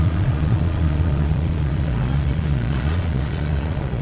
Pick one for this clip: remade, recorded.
remade